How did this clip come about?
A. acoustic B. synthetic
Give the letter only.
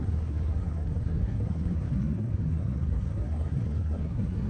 B